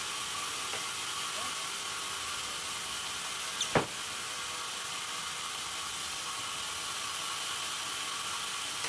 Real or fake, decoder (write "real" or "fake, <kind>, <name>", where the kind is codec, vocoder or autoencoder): real